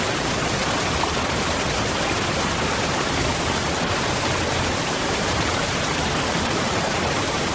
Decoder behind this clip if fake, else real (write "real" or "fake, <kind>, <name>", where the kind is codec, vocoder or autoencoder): real